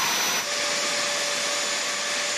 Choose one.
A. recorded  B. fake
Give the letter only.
A